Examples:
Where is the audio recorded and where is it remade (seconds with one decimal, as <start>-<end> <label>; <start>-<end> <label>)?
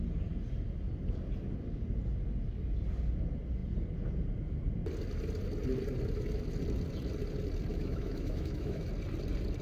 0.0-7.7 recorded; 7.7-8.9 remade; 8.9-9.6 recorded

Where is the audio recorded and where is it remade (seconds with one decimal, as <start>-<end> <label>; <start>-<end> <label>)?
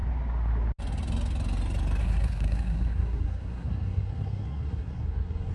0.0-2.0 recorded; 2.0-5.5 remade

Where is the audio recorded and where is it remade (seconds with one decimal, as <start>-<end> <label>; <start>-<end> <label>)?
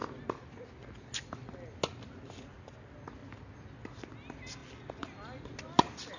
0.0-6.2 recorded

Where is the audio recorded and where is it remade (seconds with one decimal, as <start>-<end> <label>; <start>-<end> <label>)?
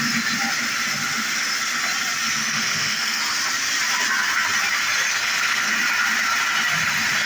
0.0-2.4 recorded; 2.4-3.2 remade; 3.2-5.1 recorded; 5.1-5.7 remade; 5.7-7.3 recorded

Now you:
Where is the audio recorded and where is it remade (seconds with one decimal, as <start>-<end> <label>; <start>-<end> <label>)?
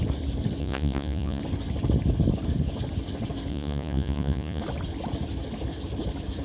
0.0-0.6 recorded; 0.6-1.4 remade; 1.4-3.5 recorded; 3.5-4.6 remade; 4.6-6.4 recorded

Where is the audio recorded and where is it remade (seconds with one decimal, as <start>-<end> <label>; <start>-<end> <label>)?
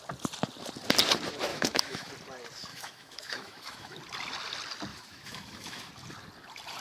0.0-1.5 recorded; 1.5-2.1 remade; 2.1-2.7 recorded; 2.7-4.0 remade; 4.0-4.9 recorded; 4.9-5.9 remade; 5.9-6.8 recorded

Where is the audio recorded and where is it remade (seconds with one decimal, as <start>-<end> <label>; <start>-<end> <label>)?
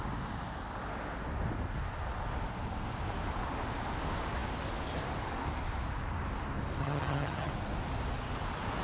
0.0-6.8 recorded; 6.8-7.5 remade; 7.5-8.8 recorded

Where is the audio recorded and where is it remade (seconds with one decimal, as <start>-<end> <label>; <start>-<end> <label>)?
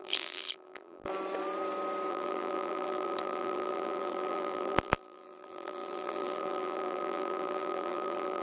0.0-1.1 remade; 1.1-2.1 recorded; 2.1-8.4 remade